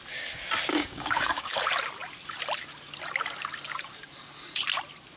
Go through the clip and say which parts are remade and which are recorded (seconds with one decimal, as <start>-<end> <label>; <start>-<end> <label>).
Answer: 0.0-0.7 recorded; 0.7-1.6 remade; 1.6-5.2 recorded